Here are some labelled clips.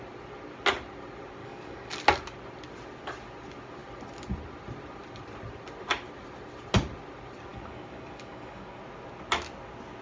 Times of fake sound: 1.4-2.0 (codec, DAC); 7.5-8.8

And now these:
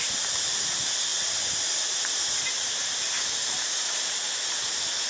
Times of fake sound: none

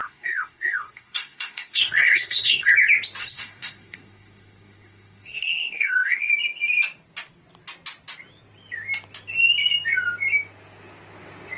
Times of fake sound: 0.0-2.7 (codec, SNAC); 3.2-6.3

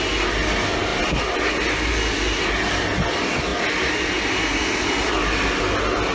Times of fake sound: none

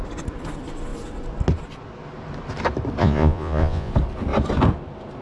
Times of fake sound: 3.0-3.9 (vocoder, Vocos)

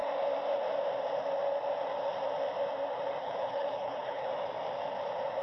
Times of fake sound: 3.2-4.3 (codec, HILCodec)